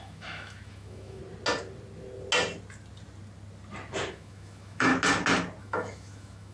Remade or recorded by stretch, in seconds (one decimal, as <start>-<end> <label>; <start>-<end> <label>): 0.0-1.2 remade; 1.2-4.1 recorded; 4.1-4.9 remade; 4.9-5.6 recorded; 5.6-6.5 remade